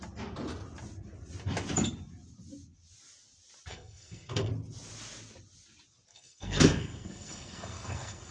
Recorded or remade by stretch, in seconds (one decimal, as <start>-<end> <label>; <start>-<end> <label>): 0.0-3.7 recorded; 3.7-4.5 remade; 4.5-6.1 recorded; 6.1-8.3 remade